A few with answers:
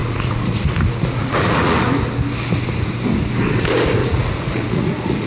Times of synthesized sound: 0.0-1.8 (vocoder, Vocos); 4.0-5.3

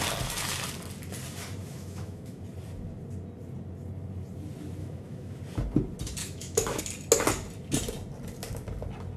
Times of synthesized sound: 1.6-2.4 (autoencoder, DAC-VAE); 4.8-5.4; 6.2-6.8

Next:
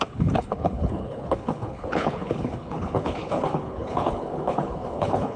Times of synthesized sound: 0.0-5.4 (codec, HILCodec)